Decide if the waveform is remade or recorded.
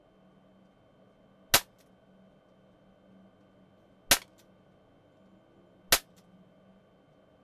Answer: recorded